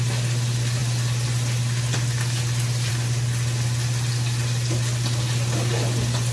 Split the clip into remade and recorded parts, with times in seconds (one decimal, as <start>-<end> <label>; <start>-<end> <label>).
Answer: 0.0-6.3 recorded